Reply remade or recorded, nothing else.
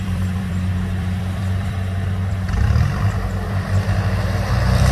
remade